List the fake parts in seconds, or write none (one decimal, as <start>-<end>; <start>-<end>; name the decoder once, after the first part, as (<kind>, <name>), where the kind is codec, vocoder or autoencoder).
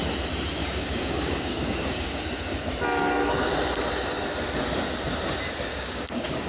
0.6-2.2 (codec, DAC); 5.7-6.5